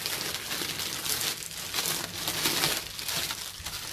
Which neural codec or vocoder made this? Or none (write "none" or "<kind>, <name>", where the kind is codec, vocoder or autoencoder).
none